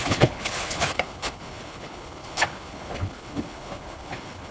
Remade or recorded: remade